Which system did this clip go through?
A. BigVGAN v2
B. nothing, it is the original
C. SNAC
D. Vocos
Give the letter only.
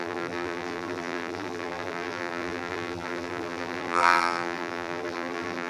A